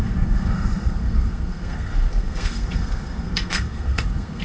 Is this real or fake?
fake